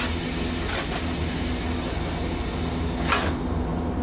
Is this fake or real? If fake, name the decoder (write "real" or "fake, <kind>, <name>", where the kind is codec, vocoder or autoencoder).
real